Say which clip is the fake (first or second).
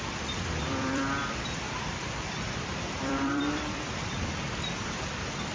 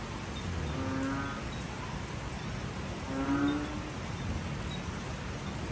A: first